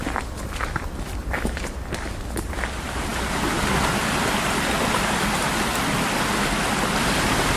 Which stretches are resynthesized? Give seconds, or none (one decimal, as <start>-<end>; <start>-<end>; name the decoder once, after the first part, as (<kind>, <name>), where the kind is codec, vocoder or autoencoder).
none